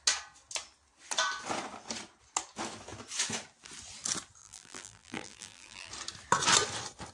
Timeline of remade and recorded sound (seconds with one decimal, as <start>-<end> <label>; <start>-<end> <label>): 0.0-4.4 recorded; 4.4-5.9 remade; 5.9-7.1 recorded